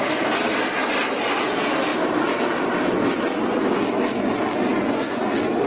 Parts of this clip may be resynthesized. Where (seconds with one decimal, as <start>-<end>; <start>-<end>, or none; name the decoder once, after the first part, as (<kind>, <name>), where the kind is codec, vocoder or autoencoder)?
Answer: 4.7-5.2 (vocoder, Vocos)